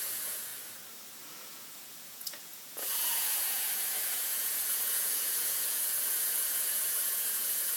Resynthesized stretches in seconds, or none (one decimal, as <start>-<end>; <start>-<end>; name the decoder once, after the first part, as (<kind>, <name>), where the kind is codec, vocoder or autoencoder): 0.0-0.5 (vocoder, Vocos); 1.4-7.8